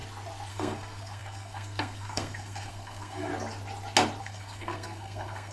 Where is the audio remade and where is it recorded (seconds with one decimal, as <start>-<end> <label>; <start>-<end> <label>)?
0.0-0.5 recorded; 0.5-3.3 remade; 3.3-4.2 recorded; 4.2-5.5 remade